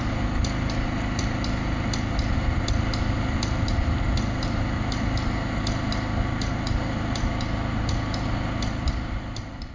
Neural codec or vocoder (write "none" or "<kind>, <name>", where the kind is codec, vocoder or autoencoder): none